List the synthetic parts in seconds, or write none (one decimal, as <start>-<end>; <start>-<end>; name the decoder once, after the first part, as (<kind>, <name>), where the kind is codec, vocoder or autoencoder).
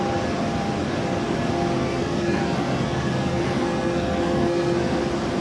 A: 1.8-5.0 (codec, SNAC)